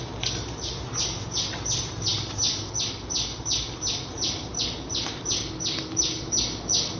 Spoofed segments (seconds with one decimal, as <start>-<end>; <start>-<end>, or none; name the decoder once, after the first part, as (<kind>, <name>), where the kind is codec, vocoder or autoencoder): none